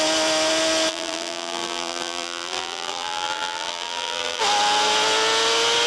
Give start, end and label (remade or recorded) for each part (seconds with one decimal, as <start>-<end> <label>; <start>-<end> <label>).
0.0-0.9 recorded; 0.9-4.4 remade; 4.4-5.9 recorded